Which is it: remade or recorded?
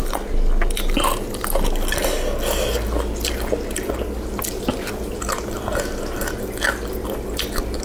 recorded